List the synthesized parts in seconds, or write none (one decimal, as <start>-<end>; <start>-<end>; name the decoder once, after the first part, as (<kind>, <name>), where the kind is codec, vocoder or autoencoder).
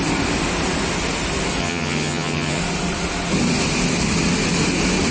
1.6-2.6 (vocoder, HiFi-GAN)